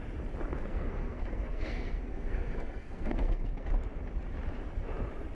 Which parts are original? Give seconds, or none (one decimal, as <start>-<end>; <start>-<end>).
0.0-0.5; 3.7-5.3